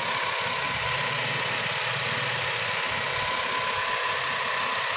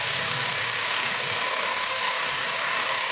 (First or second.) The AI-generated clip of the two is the second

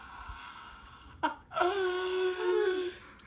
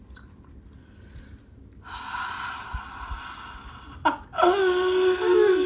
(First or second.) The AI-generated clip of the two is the first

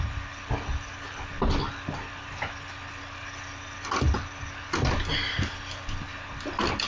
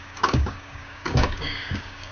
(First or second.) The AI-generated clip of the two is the second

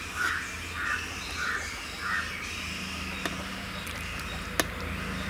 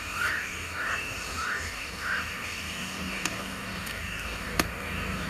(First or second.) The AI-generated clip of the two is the second